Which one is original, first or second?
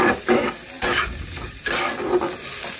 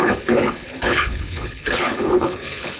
first